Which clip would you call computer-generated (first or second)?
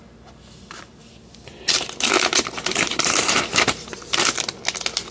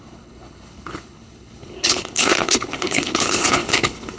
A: second